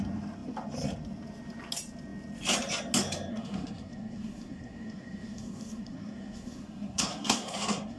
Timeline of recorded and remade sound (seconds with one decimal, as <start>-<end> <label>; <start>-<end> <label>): 0.0-3.3 recorded; 3.3-8.0 remade